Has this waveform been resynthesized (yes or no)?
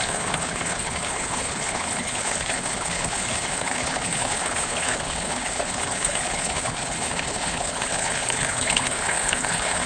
yes